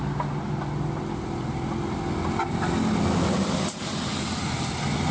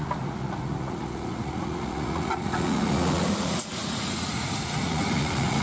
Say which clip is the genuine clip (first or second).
first